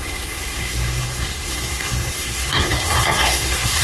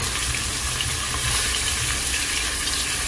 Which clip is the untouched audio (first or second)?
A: second